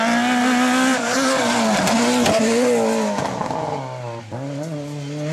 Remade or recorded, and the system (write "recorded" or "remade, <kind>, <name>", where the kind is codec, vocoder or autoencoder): recorded